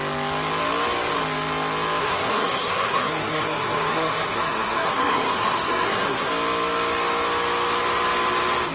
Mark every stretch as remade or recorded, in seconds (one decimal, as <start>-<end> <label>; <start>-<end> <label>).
0.0-2.0 recorded; 2.0-6.3 remade; 6.3-8.7 recorded